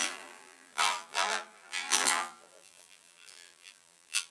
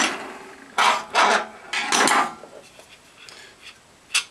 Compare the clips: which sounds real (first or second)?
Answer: second